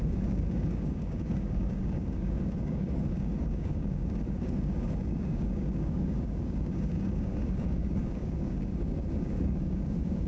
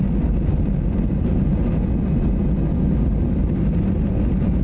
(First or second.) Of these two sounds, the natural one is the second